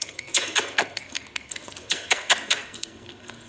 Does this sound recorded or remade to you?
remade